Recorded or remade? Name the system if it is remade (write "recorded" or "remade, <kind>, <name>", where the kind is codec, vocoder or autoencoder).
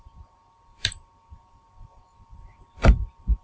remade, vocoder, BigVGAN v2